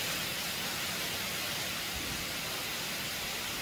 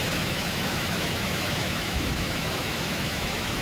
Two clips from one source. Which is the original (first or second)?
first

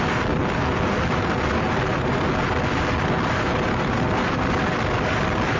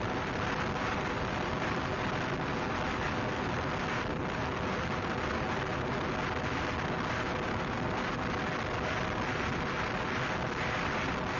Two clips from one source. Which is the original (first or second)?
second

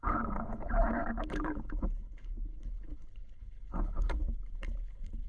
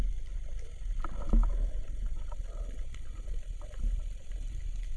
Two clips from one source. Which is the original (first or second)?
second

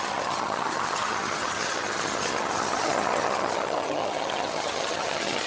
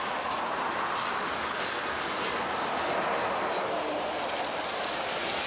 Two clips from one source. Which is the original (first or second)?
second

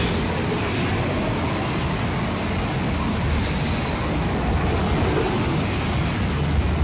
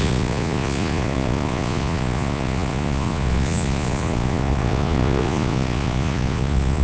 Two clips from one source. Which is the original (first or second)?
first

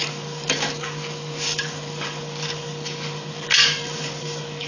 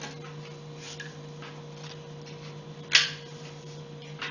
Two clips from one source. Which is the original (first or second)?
second